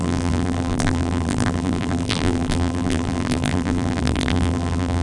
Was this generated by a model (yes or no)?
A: yes